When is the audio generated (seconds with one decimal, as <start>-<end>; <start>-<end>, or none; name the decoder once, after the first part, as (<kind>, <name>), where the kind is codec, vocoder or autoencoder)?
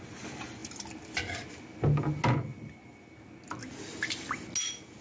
none